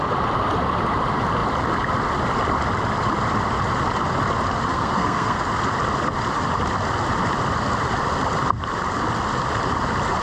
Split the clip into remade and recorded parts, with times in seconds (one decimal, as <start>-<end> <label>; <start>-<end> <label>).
0.0-4.7 recorded; 4.7-5.4 remade; 5.4-10.2 recorded